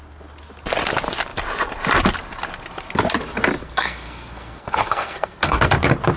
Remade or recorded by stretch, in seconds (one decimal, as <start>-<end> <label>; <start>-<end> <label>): 0.0-3.6 recorded; 3.6-5.7 remade; 5.7-6.2 recorded